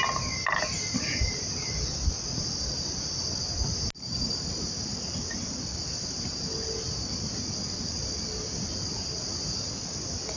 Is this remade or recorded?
recorded